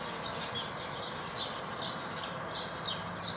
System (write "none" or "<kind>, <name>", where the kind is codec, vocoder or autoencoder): none